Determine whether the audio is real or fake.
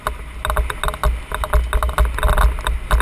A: real